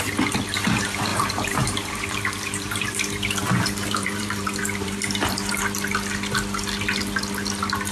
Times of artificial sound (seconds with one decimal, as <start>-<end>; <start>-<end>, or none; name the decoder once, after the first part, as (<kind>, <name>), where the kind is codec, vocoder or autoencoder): 1.1-5.5 (vocoder, BigVGAN v2)